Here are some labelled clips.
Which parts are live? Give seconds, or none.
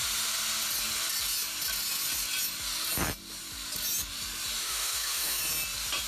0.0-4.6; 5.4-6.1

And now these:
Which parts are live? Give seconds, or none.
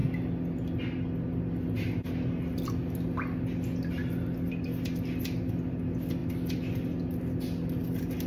0.0-8.3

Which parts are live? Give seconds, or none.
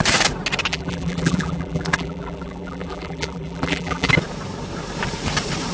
0.0-0.7; 4.1-5.7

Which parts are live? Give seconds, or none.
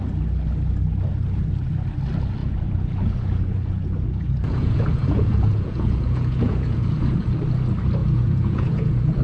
0.0-2.4; 7.4-8.0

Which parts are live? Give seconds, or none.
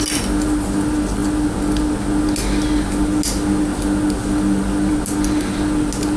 0.0-6.2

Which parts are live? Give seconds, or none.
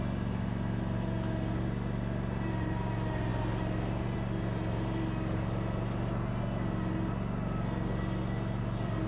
0.0-9.1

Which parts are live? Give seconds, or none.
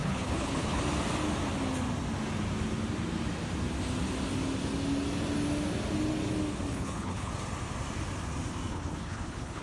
0.8-6.7; 7.3-8.7